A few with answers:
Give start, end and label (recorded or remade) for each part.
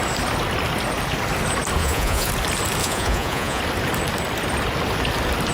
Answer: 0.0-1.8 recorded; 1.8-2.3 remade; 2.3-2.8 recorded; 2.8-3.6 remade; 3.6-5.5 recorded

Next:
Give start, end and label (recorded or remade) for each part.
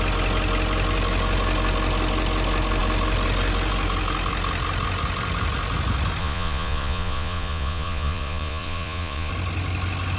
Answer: 0.0-6.2 recorded; 6.2-9.3 remade; 9.3-10.2 recorded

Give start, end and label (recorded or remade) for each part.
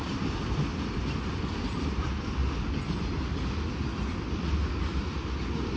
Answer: 0.0-5.8 recorded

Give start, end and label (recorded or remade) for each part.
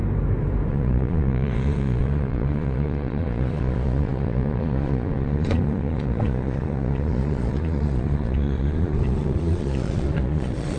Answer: 0.0-0.7 recorded; 0.7-10.8 remade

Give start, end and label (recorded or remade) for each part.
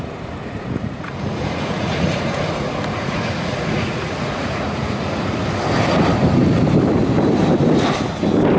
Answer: 0.0-0.4 recorded; 0.4-5.2 remade; 5.2-8.6 recorded